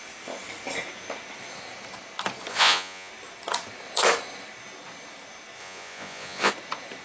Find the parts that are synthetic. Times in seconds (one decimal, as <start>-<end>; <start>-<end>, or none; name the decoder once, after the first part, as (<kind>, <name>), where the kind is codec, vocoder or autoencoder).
2.5-3.1 (vocoder, Vocos); 5.6-6.5